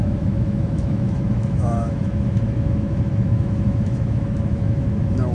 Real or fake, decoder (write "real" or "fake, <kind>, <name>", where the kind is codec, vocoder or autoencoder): fake, autoencoder, DAC-VAE